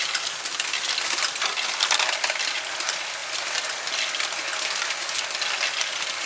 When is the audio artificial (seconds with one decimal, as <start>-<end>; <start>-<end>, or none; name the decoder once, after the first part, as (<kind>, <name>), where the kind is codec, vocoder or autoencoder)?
none